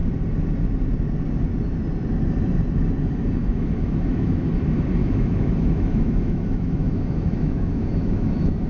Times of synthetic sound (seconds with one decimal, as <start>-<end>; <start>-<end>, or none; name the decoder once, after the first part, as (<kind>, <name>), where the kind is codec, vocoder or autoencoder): 3.4-4.5 (autoencoder, DAC-VAE); 5.0-8.7